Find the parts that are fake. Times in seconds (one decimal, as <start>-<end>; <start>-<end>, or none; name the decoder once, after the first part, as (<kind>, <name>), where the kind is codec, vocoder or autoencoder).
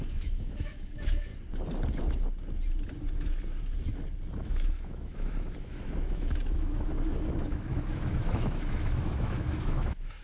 0.0-1.3 (autoencoder, DAC-VAE); 4.4-10.2